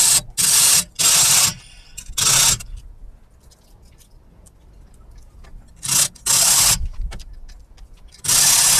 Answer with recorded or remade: recorded